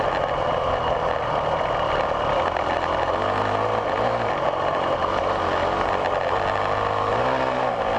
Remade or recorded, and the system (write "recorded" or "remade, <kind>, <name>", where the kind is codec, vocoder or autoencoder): recorded